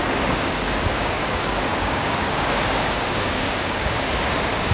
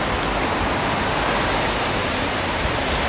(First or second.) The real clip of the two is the second